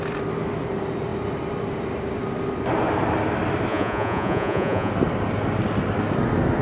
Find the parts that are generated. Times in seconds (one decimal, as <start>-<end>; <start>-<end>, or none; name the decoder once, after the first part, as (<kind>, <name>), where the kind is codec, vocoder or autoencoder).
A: 3.7-4.9 (vocoder, Vocos)